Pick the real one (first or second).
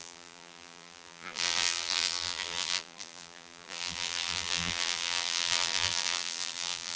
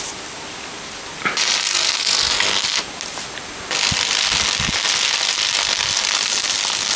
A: second